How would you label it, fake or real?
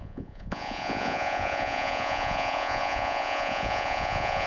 fake